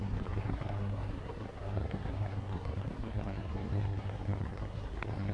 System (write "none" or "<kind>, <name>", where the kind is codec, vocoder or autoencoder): codec, SNAC